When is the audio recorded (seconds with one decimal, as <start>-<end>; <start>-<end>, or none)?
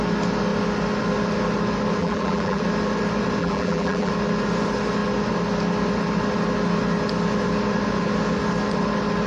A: 0.0-2.0; 2.6-3.4; 4.1-9.3